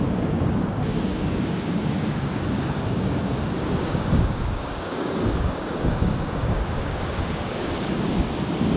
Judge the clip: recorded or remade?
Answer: remade